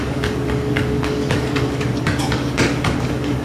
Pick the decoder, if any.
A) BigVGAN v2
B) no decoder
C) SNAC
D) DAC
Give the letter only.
D